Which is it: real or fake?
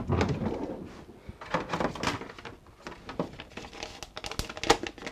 real